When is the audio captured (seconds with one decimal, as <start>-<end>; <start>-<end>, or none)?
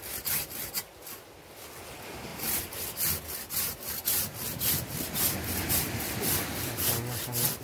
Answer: 0.0-7.6